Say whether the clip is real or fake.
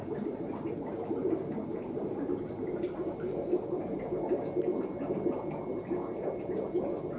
real